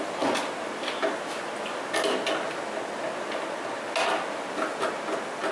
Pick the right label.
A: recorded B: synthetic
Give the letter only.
A